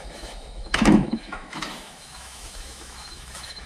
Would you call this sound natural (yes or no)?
no